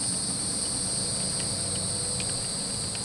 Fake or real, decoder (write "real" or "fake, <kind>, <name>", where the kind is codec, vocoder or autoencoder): real